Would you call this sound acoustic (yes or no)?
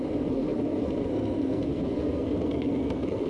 no